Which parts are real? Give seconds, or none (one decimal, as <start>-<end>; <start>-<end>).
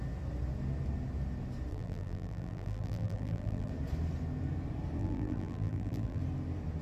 0.0-1.7; 3.7-5.0; 6.2-6.8